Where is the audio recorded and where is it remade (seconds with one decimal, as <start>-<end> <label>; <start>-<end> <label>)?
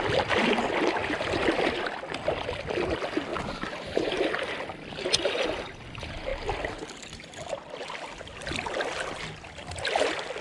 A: 0.0-3.3 recorded; 3.3-4.5 remade; 4.5-10.4 recorded